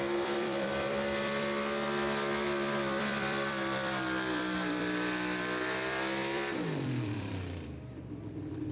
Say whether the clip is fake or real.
fake